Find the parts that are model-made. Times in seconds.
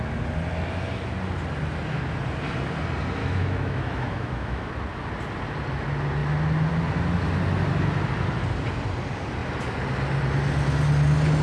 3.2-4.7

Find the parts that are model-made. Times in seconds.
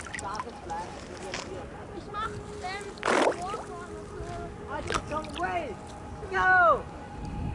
none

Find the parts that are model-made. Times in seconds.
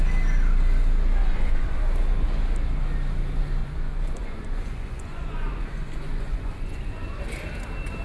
1.2-1.8; 3.6-7.2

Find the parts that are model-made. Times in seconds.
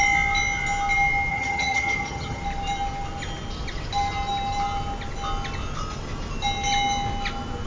1.3-2.4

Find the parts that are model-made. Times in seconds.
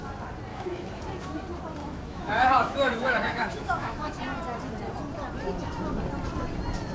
0.5-1.0; 1.8-4.2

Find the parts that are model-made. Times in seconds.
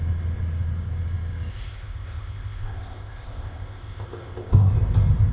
1.5-4.7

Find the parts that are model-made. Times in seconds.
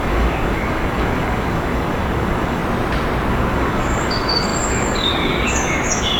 0.0-2.6; 3.3-6.2